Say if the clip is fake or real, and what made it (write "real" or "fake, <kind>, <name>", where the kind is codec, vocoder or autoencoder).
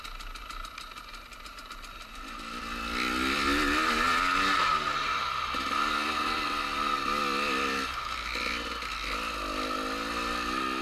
real